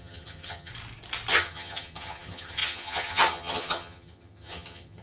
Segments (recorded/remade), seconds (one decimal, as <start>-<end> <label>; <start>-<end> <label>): 0.0-0.7 remade; 0.7-1.3 recorded; 1.3-5.0 remade